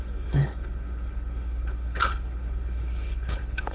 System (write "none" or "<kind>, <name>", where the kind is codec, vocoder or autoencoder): codec, HILCodec